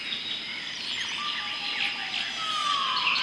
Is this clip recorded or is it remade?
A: recorded